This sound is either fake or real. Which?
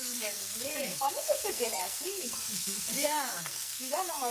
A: fake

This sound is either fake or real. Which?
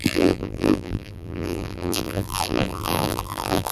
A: fake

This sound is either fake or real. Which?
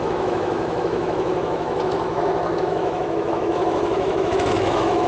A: fake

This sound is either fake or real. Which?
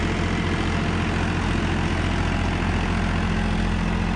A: real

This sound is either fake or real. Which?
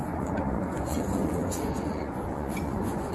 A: fake